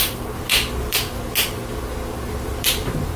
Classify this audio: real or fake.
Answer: real